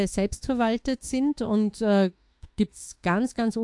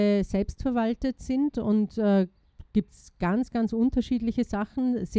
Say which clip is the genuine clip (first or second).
second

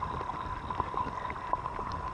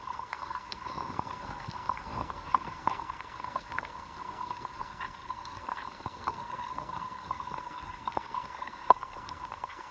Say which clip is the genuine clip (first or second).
first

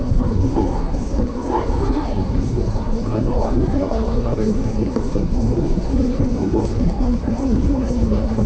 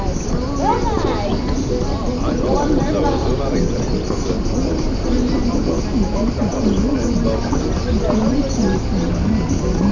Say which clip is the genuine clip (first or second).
second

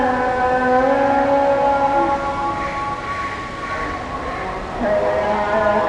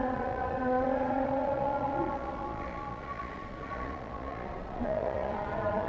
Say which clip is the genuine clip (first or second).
first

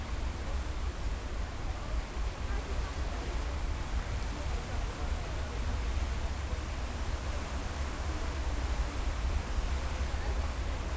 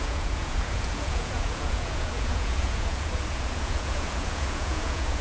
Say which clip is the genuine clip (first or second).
first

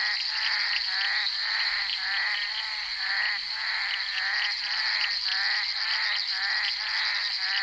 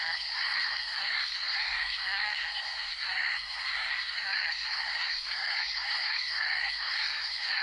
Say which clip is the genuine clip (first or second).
first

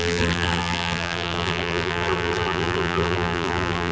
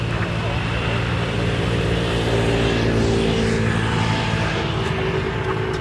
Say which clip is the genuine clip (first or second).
second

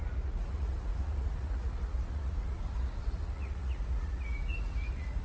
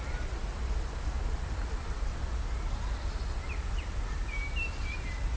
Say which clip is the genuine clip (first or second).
second